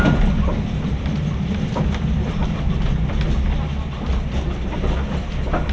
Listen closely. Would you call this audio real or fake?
real